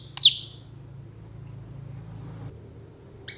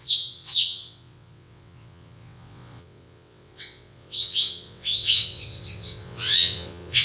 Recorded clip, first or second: first